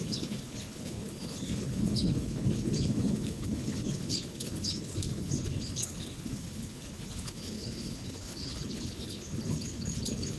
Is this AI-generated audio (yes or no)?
yes